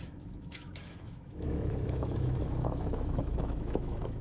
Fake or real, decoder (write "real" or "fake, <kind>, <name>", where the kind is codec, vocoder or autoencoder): fake, autoencoder, DAC-VAE